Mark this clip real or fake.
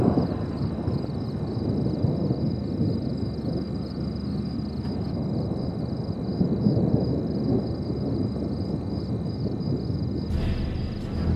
real